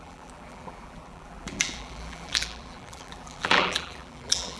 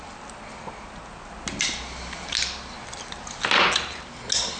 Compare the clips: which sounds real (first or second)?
second